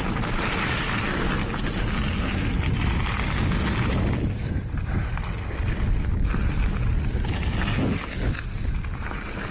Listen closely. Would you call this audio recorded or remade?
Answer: recorded